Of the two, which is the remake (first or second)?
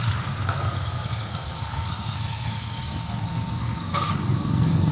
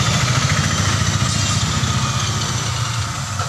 first